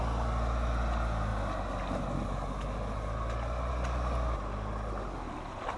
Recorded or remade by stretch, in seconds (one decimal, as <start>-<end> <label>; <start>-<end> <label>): 0.0-5.8 recorded